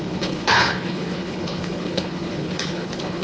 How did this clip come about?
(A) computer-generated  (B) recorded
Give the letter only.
A